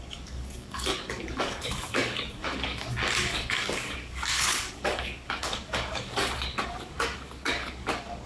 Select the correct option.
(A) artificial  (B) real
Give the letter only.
A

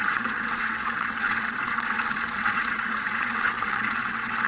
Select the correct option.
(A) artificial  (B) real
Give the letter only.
A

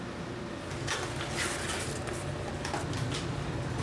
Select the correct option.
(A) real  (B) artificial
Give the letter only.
A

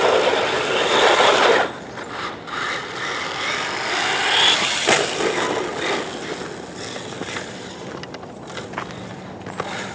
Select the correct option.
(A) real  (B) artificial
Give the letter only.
A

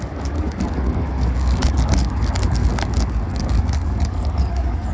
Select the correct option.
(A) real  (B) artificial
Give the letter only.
B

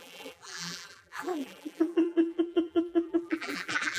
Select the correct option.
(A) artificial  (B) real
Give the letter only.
A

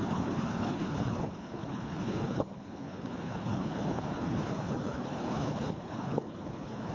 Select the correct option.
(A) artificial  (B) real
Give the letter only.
A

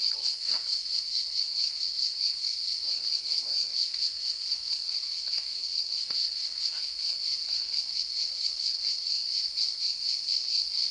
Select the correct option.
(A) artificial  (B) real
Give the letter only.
A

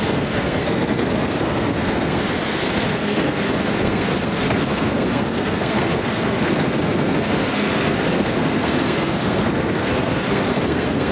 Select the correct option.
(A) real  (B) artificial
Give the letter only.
B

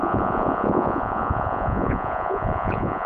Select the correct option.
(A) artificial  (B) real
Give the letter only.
A